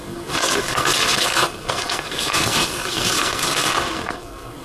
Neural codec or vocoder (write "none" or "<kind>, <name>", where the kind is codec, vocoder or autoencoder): codec, SNAC